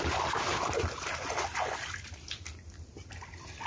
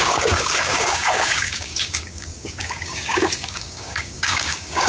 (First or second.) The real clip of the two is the first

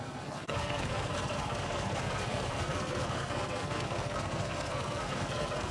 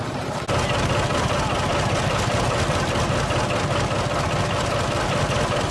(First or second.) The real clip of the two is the second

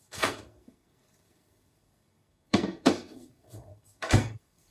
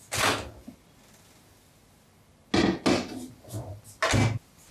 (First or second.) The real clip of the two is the second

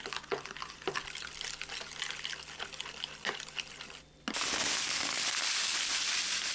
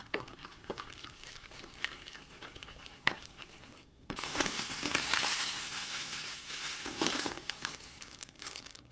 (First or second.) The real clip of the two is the first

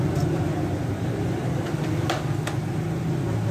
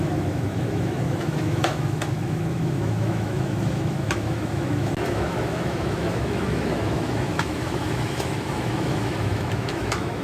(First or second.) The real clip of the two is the first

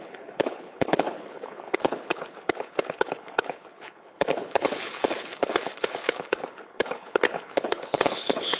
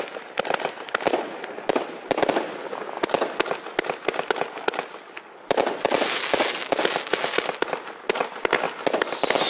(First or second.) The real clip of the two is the second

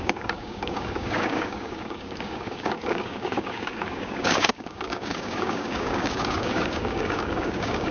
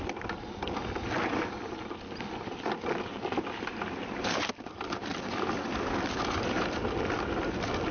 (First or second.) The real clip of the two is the second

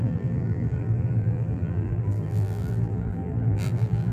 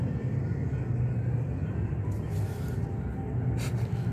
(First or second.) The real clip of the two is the second